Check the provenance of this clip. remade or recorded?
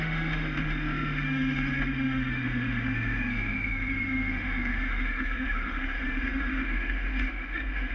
remade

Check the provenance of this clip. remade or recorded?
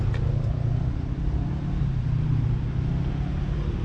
recorded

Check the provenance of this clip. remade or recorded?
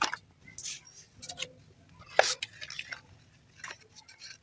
recorded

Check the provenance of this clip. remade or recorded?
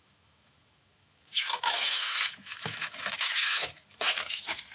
remade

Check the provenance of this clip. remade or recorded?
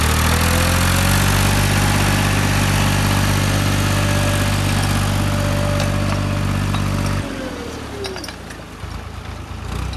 recorded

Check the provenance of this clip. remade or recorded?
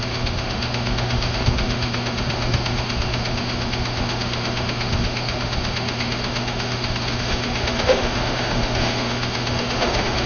remade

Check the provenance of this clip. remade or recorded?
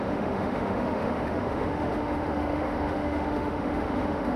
remade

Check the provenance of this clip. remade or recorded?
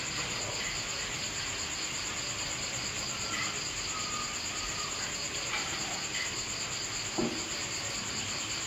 recorded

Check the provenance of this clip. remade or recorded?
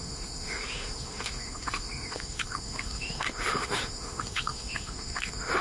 remade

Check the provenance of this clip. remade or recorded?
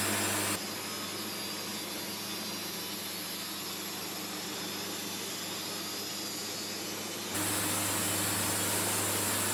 recorded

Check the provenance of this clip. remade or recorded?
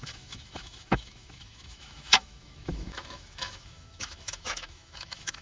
remade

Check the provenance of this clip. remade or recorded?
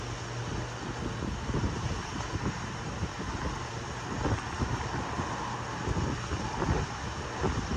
recorded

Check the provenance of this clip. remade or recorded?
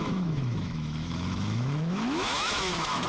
remade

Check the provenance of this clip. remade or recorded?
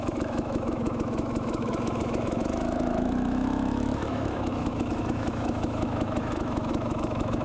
remade